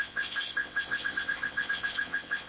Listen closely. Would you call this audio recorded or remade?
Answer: remade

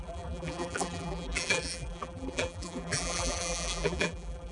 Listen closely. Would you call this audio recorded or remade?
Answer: remade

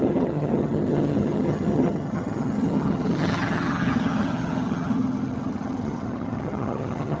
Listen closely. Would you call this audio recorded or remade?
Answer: remade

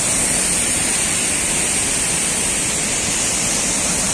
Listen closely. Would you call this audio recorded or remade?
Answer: recorded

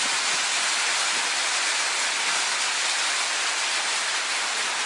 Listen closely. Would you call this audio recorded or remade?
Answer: recorded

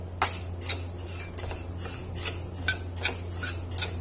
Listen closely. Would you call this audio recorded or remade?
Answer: recorded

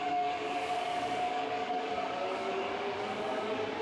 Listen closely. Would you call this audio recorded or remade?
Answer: remade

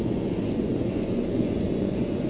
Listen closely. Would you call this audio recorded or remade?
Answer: remade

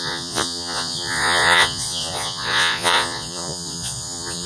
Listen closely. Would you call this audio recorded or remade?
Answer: remade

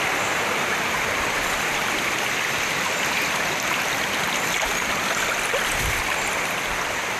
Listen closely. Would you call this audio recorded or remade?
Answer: recorded